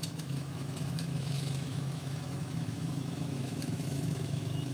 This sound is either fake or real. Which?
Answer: fake